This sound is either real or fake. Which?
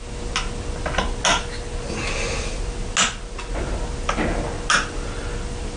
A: real